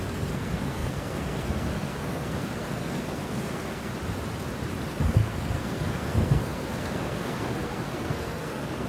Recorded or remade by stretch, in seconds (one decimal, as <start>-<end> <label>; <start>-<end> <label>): 0.0-3.9 remade; 3.9-4.9 recorded; 4.9-8.9 remade